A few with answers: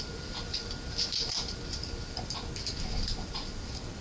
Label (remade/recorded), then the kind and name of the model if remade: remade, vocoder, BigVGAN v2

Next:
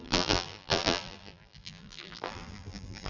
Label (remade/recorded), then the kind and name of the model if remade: remade, vocoder, BigVGAN v2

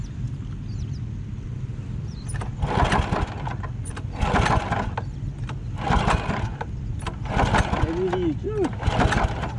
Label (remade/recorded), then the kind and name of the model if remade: recorded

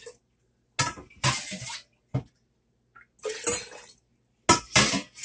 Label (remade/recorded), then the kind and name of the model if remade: recorded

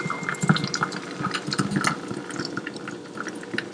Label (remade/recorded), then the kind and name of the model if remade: remade, vocoder, BigVGAN v2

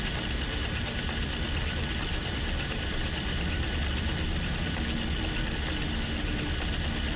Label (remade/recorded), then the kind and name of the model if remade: recorded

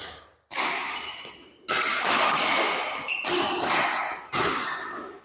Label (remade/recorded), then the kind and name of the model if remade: recorded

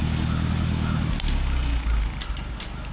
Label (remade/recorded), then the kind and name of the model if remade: recorded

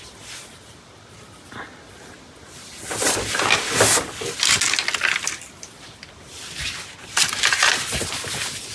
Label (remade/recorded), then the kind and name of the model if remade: recorded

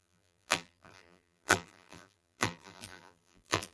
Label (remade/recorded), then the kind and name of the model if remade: remade, vocoder, BigVGAN v2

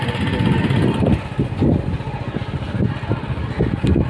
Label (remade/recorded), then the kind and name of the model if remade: recorded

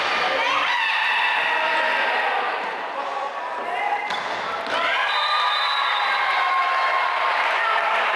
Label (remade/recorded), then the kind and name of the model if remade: recorded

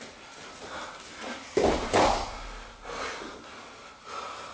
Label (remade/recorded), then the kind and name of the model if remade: recorded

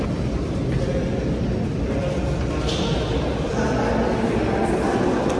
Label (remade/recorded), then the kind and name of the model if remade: recorded